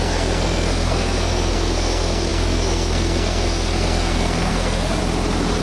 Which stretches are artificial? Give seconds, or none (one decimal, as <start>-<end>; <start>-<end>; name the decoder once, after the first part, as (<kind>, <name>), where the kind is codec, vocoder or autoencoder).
0.0-5.0 (codec, SNAC)